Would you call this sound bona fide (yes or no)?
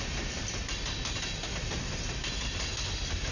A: yes